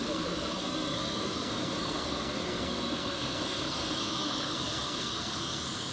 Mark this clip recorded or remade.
remade